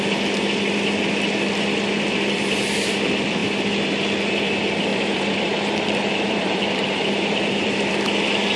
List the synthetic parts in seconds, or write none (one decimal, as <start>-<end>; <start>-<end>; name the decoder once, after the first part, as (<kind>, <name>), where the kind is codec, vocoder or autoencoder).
4.9-7.9 (vocoder, BigVGAN v2)